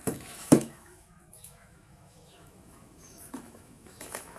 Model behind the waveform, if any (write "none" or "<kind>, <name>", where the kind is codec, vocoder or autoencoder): autoencoder, DAC-VAE